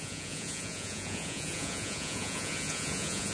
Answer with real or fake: fake